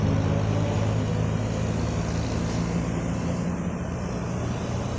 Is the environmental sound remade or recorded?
recorded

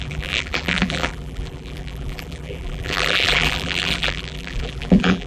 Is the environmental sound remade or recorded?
remade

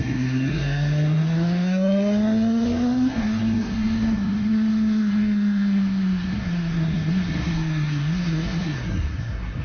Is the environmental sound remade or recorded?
remade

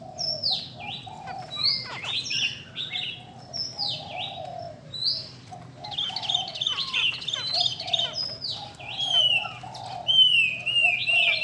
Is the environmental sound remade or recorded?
recorded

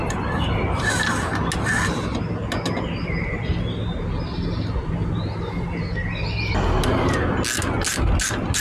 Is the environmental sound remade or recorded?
recorded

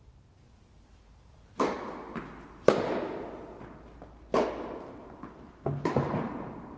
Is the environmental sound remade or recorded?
recorded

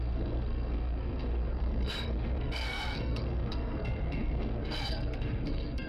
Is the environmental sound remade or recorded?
remade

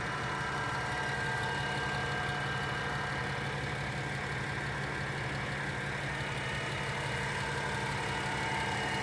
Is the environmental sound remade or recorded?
recorded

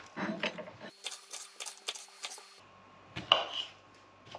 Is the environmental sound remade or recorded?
recorded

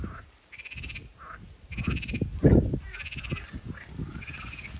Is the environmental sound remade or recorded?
recorded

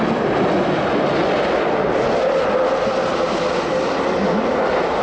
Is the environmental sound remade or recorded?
recorded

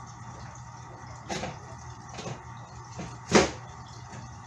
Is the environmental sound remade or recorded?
recorded